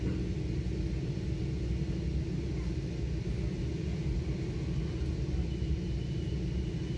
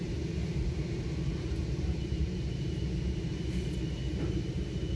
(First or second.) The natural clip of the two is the first